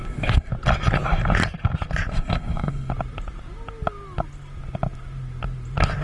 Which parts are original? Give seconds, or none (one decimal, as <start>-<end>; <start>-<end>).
0.5-2.1; 2.9-6.0